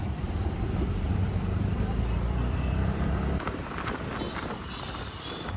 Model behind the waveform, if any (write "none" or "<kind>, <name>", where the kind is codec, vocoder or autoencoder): vocoder, BigVGAN v2